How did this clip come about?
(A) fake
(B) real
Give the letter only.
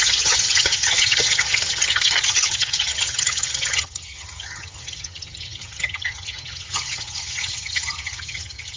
A